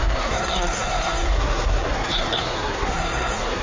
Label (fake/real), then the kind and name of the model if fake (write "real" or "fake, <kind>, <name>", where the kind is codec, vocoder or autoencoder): fake, codec, SNAC